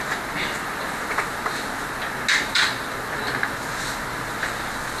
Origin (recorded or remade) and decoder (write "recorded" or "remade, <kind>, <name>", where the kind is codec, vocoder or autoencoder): recorded